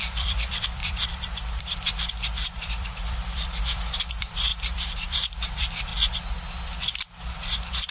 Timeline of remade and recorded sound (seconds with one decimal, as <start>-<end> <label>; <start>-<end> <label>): 0.0-5.9 remade; 5.9-7.3 recorded; 7.3-7.9 remade